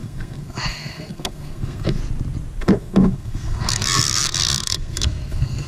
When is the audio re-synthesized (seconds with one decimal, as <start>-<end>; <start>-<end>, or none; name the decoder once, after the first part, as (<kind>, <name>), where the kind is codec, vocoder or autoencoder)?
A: 0.0-2.0 (codec, SNAC); 2.6-5.7